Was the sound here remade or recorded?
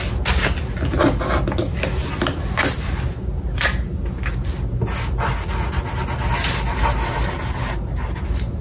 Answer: recorded